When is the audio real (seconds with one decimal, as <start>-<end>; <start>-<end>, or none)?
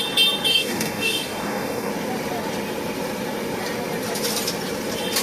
0.0-0.5; 1.9-5.2